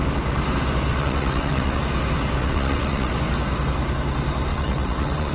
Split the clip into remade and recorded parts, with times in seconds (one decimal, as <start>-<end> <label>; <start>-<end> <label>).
0.0-0.9 recorded; 0.9-1.8 remade; 1.8-2.4 recorded; 2.4-3.1 remade; 3.1-4.5 recorded; 4.5-5.3 remade